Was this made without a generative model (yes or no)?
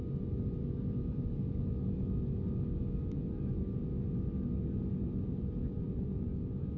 yes